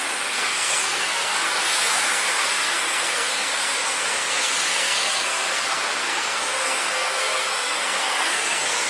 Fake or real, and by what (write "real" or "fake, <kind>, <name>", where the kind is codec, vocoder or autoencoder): fake, codec, SNAC